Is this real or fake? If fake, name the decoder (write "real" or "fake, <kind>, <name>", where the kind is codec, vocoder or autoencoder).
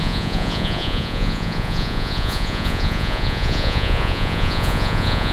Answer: fake, vocoder, Vocos